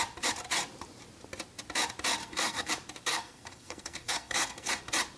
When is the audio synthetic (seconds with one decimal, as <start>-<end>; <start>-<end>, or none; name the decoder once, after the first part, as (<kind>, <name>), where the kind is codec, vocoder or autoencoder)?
2.2-2.7 (codec, SNAC); 3.1-4.8